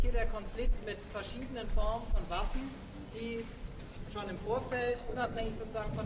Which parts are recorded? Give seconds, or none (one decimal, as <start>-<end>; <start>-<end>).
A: 0.0-4.9; 5.4-6.1

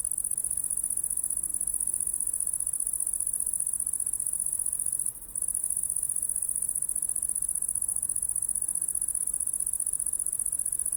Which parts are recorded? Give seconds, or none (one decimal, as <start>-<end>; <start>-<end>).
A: 0.0-11.0

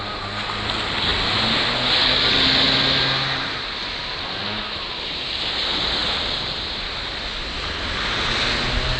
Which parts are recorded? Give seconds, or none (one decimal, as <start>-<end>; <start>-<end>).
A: 0.0-9.0

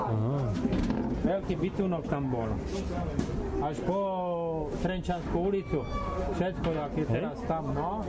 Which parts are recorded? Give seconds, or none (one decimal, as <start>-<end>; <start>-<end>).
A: 0.0-8.1